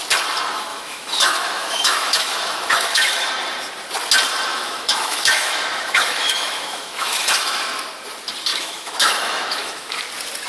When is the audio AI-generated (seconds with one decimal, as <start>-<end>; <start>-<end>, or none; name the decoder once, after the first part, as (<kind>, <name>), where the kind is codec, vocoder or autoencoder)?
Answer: 0.7-3.3 (autoencoder, DAC-VAE); 4.5-7.6; 8.5-10.0